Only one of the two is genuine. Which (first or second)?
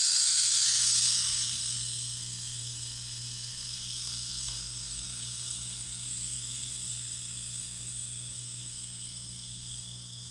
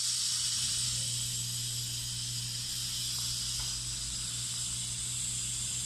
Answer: second